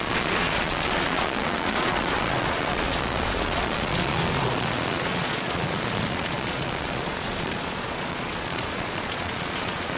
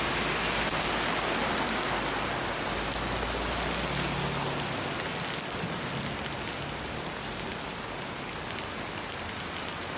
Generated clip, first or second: first